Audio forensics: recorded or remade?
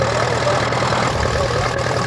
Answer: recorded